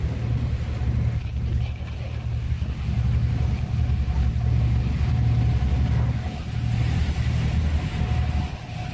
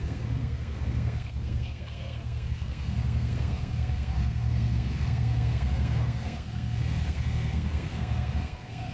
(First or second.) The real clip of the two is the first